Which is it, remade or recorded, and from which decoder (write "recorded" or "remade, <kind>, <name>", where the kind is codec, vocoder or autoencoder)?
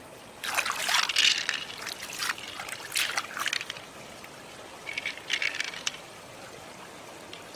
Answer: recorded